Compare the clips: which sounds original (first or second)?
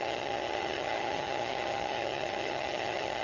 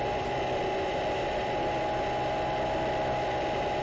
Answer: second